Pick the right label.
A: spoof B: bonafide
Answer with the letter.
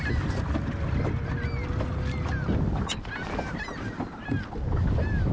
B